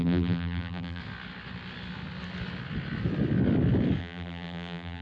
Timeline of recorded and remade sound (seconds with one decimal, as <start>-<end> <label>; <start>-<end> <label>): 0.0-1.0 remade; 1.0-4.0 recorded; 4.0-5.0 remade